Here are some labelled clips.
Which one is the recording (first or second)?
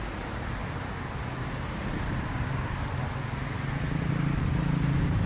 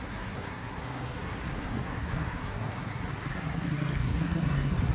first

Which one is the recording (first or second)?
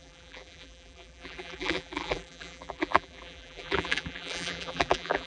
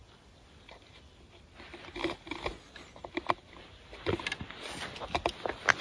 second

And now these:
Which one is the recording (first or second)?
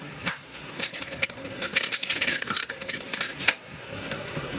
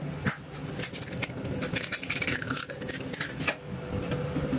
second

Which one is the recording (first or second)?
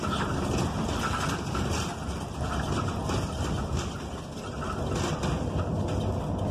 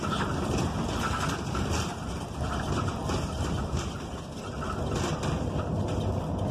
first